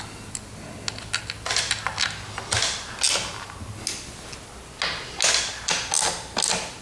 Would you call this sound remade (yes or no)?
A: no